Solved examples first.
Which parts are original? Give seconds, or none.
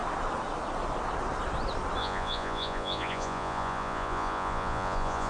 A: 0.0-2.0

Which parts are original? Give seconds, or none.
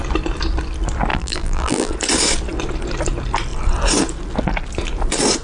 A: 0.0-1.1; 1.9-5.4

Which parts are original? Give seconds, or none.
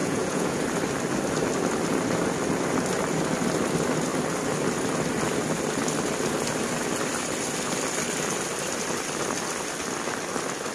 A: 0.6-10.7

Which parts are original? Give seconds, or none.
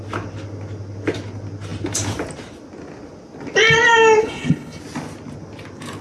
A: 0.0-4.2; 4.8-6.0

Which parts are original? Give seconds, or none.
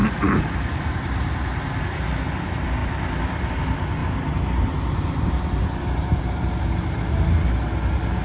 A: 1.8-2.8; 3.5-8.2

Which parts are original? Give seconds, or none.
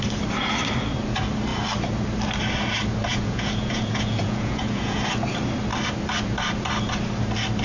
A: 0.0-3.1; 5.0-7.6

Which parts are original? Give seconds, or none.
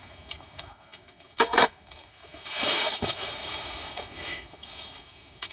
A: none